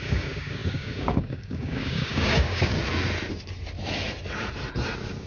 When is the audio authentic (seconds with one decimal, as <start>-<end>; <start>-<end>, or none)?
2.7-5.3